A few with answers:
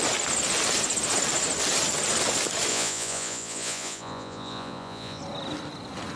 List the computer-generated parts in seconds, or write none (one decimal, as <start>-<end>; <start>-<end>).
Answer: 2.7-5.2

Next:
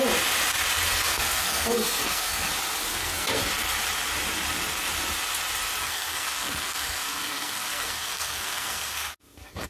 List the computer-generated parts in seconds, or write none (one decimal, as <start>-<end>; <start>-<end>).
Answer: 1.1-2.5; 2.9-3.4; 5.8-9.7

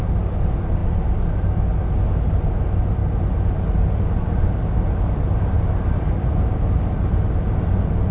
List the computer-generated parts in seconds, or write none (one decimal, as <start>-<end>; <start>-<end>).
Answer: 0.8-1.5; 3.0-6.6

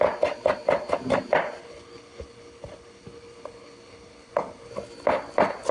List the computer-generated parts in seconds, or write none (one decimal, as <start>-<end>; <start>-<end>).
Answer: 1.6-4.7